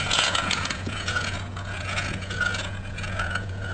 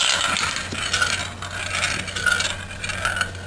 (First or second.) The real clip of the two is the second